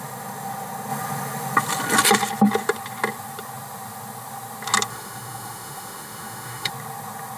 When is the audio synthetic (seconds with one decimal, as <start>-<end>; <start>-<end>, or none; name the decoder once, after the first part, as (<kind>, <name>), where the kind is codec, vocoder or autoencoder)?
4.9-6.7 (autoencoder, DAC-VAE)